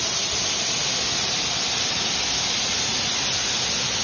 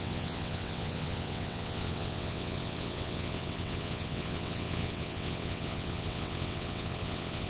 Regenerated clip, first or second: second